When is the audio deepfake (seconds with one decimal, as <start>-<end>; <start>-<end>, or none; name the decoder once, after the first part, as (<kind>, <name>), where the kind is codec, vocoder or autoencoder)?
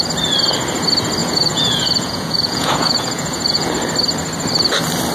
1.2-3.7 (vocoder, Vocos)